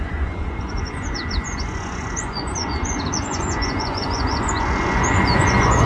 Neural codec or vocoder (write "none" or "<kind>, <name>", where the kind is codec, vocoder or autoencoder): vocoder, Vocos